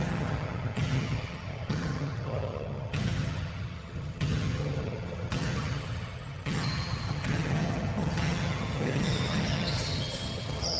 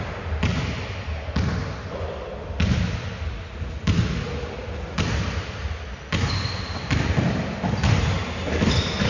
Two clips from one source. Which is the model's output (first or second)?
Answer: first